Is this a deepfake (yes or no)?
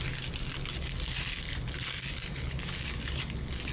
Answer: no